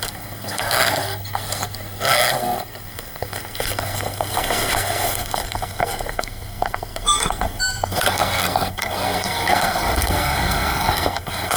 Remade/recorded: remade